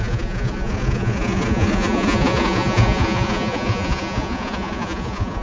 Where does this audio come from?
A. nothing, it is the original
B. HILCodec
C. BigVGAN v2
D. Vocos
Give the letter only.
D